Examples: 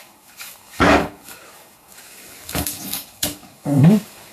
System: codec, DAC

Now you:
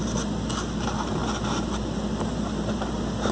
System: none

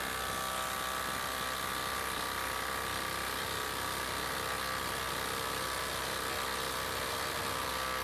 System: none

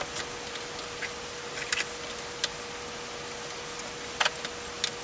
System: none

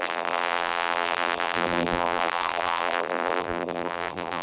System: vocoder, BigVGAN v2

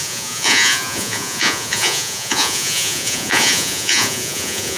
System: vocoder, Vocos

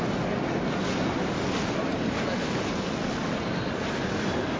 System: none